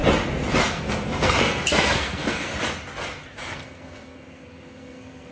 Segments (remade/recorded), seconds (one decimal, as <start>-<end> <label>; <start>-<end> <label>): 0.0-0.7 recorded; 0.7-2.5 remade; 2.5-3.4 recorded; 3.4-5.3 remade